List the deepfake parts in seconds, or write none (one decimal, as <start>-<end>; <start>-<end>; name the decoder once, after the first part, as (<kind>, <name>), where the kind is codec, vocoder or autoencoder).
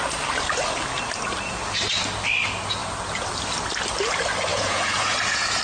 4.5-5.6 (vocoder, Vocos)